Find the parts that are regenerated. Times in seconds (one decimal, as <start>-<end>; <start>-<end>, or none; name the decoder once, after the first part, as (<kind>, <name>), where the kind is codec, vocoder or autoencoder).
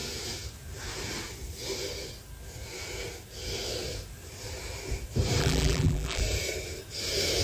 5.4-6.2 (vocoder, BigVGAN v2)